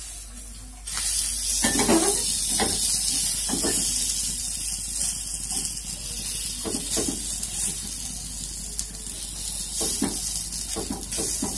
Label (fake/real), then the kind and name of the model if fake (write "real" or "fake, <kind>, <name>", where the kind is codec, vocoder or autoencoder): real